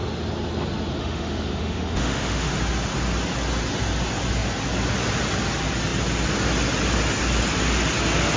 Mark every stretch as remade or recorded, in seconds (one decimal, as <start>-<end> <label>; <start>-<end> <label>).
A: 0.0-1.0 recorded; 1.0-2.6 remade; 2.6-8.4 recorded